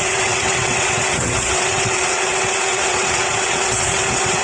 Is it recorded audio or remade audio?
remade